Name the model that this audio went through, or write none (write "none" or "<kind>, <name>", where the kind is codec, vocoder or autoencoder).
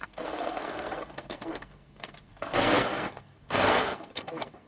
codec, SNAC